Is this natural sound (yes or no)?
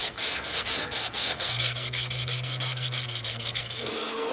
no